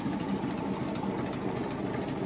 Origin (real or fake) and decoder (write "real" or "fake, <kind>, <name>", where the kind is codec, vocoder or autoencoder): real